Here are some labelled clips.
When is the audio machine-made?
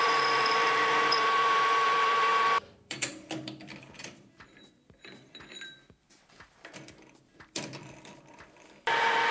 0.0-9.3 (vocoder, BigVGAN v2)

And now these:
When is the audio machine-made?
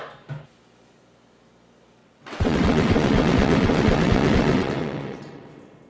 2.0-5.5 (vocoder, WaveNeXt)